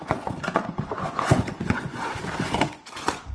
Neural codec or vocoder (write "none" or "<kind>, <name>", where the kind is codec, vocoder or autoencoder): vocoder, Vocos